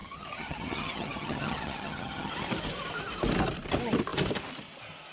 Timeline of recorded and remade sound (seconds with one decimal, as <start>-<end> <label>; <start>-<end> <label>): 0.0-2.3 remade; 2.3-5.1 recorded